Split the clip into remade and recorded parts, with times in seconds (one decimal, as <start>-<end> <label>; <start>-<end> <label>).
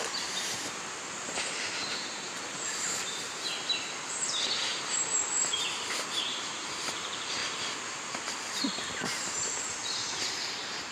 0.0-7.4 remade; 7.4-9.8 recorded; 9.8-10.9 remade